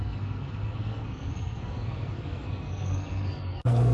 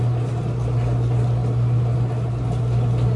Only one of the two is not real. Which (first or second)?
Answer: first